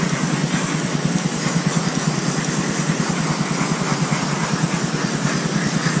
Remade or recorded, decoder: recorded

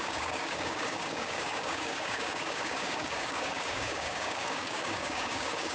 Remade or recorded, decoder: remade, codec, DAC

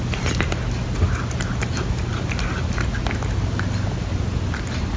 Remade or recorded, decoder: recorded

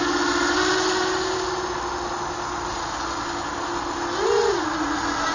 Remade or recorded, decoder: recorded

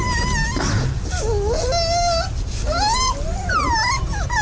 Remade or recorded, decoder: recorded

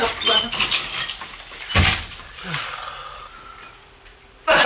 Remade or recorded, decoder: recorded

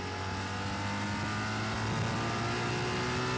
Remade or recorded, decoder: recorded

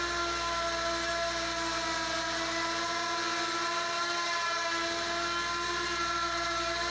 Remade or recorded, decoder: recorded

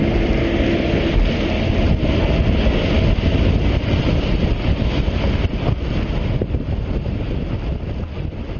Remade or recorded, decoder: recorded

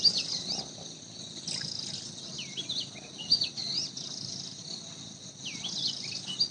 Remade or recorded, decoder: recorded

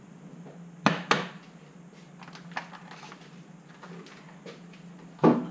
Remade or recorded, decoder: recorded